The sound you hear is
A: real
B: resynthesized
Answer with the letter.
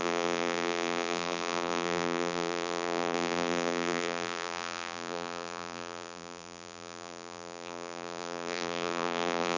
B